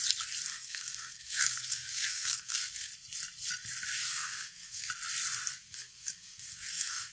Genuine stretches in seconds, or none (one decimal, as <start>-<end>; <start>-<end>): 0.0-0.5; 2.9-4.0; 4.9-5.5